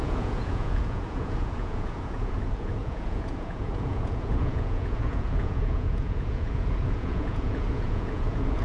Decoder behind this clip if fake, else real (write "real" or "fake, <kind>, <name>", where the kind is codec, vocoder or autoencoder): fake, vocoder, Vocos